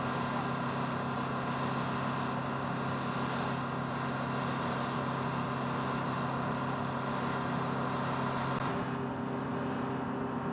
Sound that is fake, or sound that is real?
real